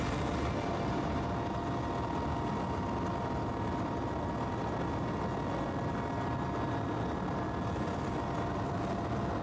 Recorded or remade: recorded